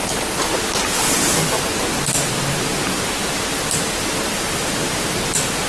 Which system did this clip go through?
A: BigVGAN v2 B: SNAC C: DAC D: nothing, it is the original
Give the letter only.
D